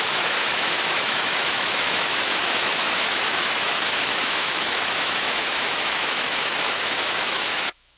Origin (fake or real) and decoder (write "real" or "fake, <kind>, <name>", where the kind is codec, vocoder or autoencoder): fake, autoencoder, DAC-VAE